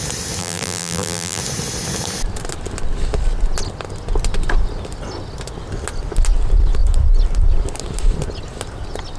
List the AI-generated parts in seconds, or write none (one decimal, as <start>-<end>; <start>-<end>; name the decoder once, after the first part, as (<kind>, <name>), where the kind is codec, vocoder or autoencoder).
0.4-1.4 (vocoder, BigVGAN v2)